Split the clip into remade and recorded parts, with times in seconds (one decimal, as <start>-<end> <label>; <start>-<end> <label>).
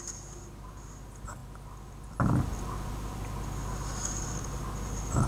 0.0-5.3 recorded